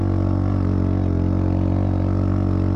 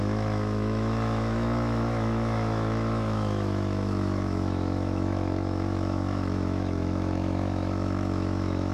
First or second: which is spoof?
second